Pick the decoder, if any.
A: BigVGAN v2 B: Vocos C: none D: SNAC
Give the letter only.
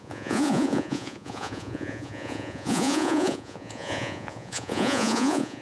B